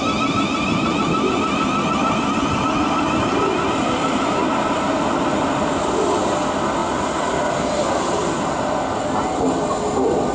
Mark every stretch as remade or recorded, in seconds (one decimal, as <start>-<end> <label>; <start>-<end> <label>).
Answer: 0.0-10.3 recorded